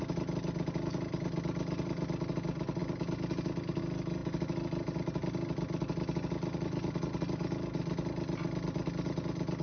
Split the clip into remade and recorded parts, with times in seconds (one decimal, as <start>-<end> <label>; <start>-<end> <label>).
0.0-9.6 recorded